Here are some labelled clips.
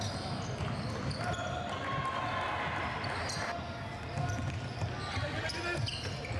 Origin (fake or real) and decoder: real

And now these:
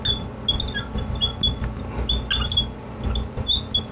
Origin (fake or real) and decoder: real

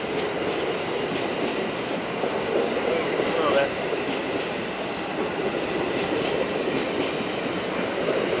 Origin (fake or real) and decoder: real